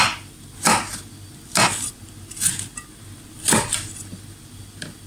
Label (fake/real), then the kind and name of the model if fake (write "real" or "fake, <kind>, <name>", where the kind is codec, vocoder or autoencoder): real